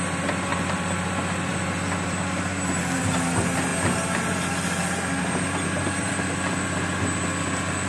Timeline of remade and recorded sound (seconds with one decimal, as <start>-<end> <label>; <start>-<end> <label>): 0.0-7.9 recorded